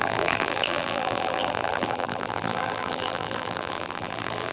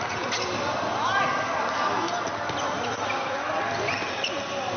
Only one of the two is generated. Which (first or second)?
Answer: first